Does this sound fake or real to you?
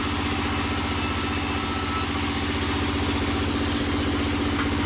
real